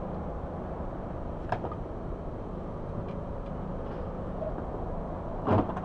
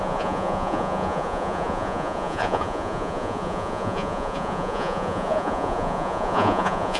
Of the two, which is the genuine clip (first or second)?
first